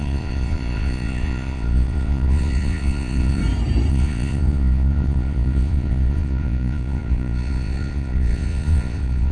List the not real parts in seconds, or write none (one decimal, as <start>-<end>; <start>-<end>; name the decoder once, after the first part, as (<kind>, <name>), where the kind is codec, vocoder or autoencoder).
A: 0.0-3.4 (vocoder, Vocos); 3.9-9.3